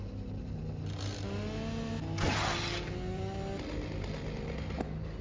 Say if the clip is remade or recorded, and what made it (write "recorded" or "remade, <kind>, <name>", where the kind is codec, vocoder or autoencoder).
recorded